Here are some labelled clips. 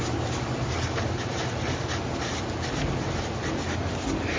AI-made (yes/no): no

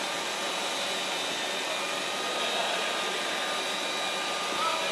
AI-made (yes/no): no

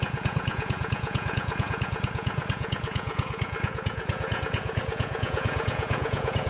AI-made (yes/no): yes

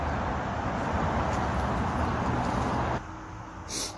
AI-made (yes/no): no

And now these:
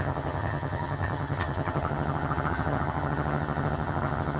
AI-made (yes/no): yes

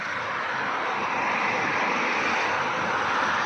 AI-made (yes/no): no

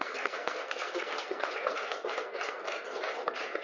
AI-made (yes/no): yes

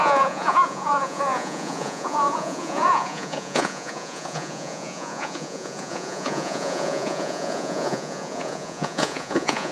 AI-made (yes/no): yes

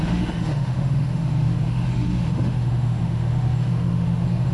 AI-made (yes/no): yes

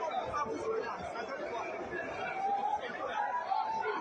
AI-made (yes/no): no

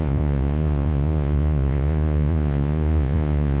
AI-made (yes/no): yes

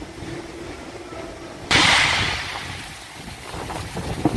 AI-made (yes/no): yes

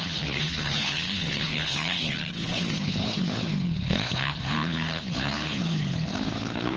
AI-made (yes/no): yes